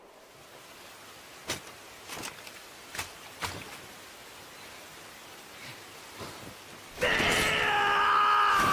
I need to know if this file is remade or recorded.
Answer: recorded